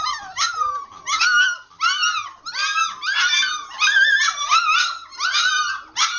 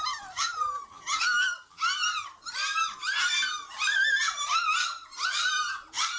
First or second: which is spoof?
second